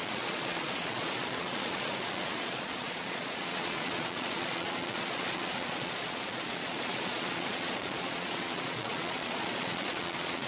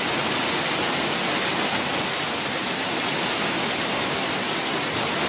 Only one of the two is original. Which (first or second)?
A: second